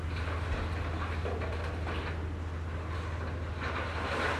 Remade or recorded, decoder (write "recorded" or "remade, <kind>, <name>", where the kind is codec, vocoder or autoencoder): recorded